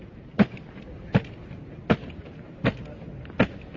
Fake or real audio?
real